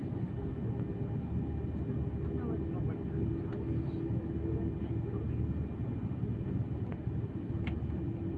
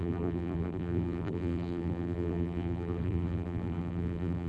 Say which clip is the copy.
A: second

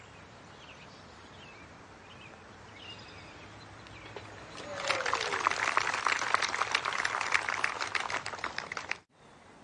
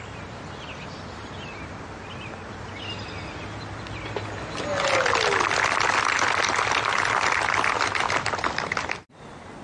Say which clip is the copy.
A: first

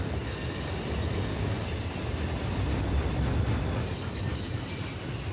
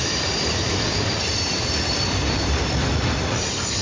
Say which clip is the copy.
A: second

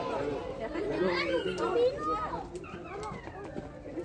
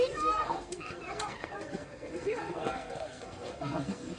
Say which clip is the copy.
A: second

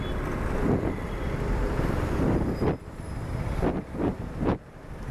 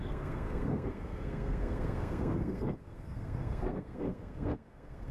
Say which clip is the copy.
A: second